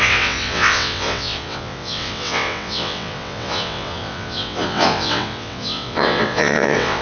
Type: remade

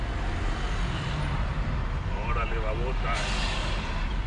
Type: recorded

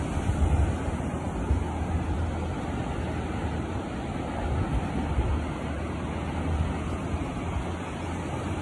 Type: recorded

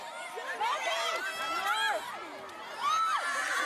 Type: recorded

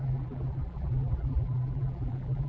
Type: remade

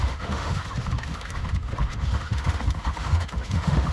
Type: remade